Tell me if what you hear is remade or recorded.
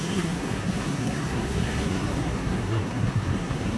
remade